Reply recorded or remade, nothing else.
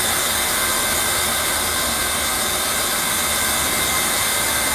recorded